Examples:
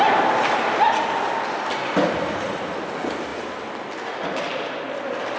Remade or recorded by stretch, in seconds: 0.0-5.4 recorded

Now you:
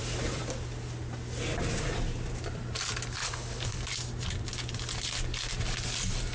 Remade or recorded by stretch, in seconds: 0.0-3.2 recorded; 3.2-3.8 remade; 3.8-6.3 recorded

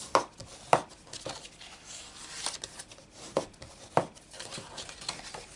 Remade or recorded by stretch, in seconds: 0.0-5.6 recorded